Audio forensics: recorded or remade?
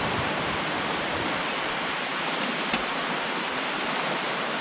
remade